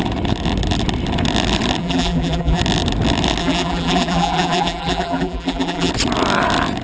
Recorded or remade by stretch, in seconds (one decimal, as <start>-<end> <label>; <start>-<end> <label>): 0.0-1.8 recorded; 1.8-2.6 remade; 2.6-3.4 recorded; 3.4-5.9 remade; 5.9-6.8 recorded